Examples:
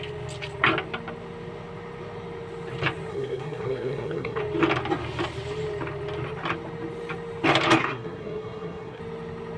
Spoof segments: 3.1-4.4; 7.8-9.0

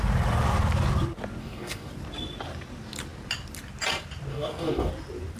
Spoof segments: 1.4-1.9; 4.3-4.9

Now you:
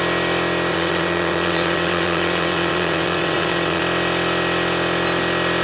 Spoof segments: 0.7-3.8

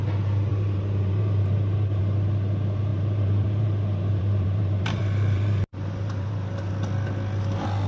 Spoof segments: 0.5-2.0; 2.9-6.7

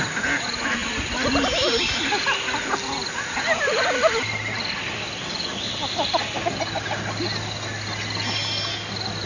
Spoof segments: none

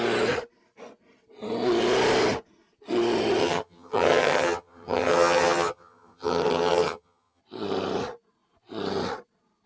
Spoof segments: 3.4-7.4

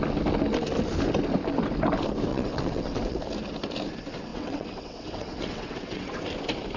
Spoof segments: 2.3-3.2; 4.3-6.1

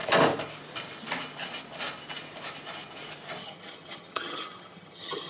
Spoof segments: 3.4-5.3